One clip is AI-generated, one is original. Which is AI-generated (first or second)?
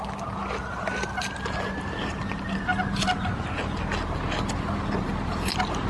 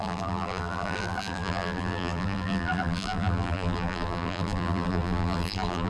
second